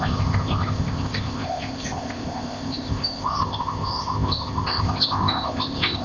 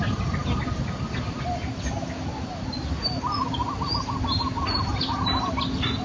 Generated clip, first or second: first